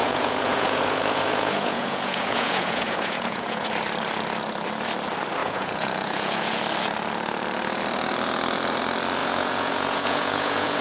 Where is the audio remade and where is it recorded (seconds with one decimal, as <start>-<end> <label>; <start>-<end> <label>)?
0.0-3.7 remade; 3.7-5.4 recorded; 5.4-6.6 remade; 6.6-9.2 recorded; 9.2-10.8 remade